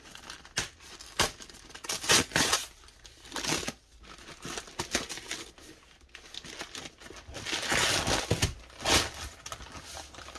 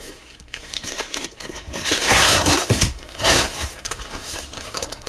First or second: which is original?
first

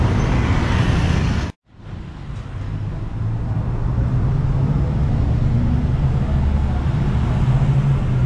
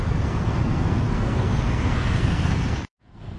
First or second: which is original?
first